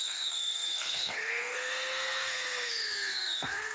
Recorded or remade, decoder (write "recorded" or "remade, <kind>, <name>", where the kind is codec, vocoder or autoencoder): remade, codec, SNAC